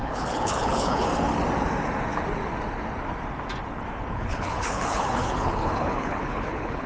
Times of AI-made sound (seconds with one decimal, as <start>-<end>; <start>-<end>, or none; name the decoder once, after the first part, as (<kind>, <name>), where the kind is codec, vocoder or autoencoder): 0.0-1.1 (codec, HILCodec); 4.1-6.9